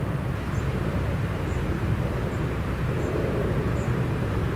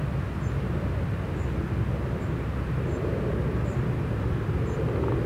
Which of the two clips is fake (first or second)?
first